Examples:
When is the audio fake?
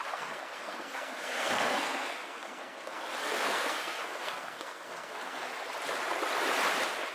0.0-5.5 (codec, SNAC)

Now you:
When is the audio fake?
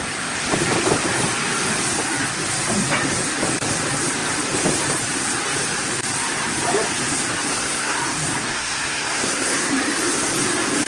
7.5-8.0 (codec, SNAC); 8.4-9.7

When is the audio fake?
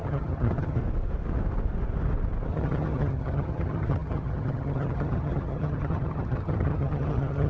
0.0-0.8 (vocoder, HiFi-GAN); 2.5-7.5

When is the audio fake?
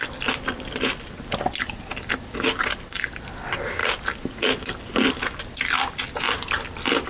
none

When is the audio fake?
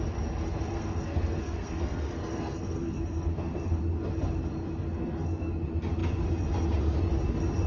0.7-3.8 (codec, SNAC); 4.8-5.5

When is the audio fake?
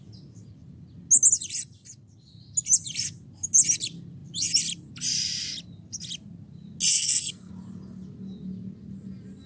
6.9-7.5 (codec, SNAC)